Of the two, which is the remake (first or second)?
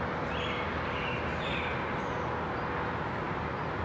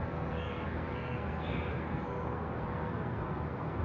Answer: second